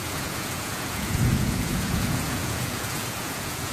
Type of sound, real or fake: fake